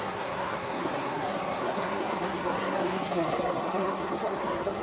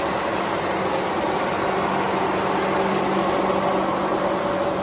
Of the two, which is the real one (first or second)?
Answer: second